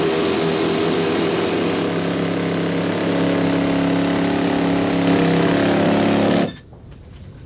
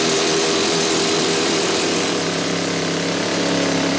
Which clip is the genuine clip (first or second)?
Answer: first